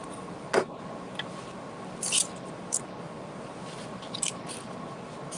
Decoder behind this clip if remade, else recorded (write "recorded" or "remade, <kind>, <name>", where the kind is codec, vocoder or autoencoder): recorded